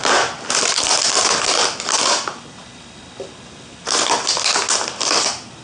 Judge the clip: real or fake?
real